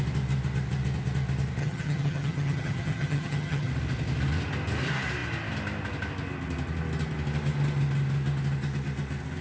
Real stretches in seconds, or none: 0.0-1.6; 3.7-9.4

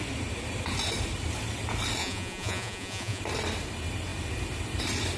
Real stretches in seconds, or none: 0.0-2.0; 3.2-5.2

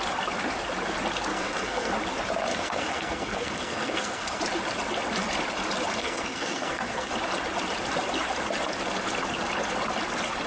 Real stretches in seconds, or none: 0.0-1.3; 1.9-2.5; 4.4-6.0; 7.1-10.5

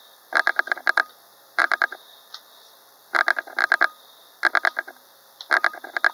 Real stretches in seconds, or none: 0.0-1.3; 2.2-6.1

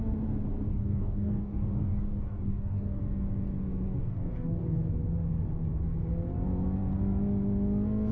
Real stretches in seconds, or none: 0.0-0.7; 3.0-4.0; 4.8-8.1